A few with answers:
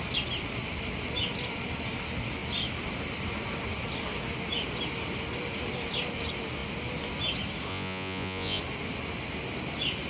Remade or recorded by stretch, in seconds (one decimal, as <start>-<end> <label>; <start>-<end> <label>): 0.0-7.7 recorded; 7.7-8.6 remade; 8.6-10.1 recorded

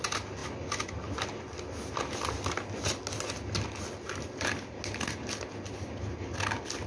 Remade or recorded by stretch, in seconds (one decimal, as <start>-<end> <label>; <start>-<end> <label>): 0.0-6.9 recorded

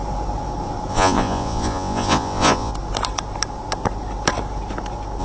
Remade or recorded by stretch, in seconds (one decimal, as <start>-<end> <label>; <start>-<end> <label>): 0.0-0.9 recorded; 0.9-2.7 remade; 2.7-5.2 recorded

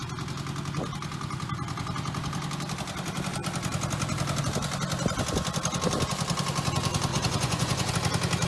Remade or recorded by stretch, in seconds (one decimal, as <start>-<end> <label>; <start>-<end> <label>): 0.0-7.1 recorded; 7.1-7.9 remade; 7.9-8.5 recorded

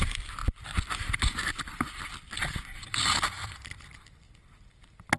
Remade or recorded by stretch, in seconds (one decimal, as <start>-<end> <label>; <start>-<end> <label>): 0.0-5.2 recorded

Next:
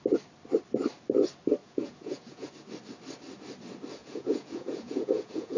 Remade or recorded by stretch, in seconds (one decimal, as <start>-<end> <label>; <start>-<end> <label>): 0.0-1.6 recorded; 1.6-2.5 remade; 2.5-4.0 recorded; 4.0-5.6 remade

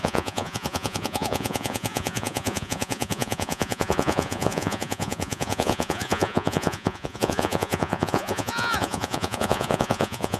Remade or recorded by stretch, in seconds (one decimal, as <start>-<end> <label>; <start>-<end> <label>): 0.0-10.4 remade

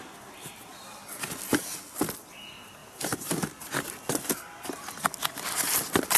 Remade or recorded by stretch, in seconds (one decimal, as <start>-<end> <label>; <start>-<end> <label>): 0.0-6.2 recorded